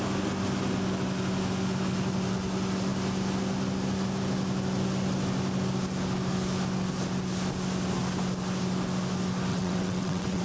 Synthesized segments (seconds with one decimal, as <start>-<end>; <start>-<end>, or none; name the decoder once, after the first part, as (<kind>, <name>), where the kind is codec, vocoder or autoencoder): 9.5-10.4 (vocoder, WaveNeXt)